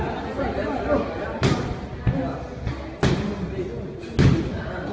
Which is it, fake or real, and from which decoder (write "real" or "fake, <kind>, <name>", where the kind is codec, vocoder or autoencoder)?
real